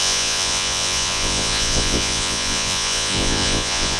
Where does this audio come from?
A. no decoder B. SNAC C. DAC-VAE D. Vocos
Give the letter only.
D